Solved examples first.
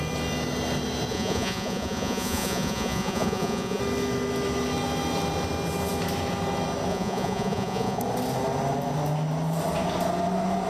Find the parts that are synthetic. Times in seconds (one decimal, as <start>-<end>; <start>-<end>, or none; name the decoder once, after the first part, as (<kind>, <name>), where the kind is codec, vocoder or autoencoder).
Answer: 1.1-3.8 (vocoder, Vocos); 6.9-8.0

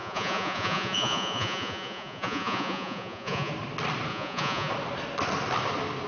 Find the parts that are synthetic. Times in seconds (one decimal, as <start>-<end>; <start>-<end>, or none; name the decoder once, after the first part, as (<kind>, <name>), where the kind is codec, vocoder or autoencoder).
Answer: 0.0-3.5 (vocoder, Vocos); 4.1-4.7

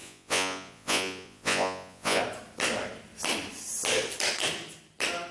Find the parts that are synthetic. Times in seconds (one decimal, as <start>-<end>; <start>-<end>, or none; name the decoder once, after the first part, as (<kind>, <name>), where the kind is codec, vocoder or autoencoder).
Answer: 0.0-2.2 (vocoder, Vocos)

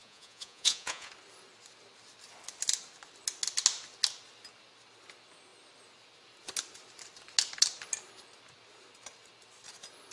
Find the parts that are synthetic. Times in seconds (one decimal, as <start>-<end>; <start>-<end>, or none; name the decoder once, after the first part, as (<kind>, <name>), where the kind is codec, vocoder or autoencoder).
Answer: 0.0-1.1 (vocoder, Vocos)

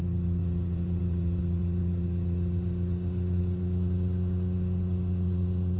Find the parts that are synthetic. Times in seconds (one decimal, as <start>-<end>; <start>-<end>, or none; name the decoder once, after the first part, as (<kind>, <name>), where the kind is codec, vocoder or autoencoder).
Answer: 0.4-1.4 (vocoder, Vocos)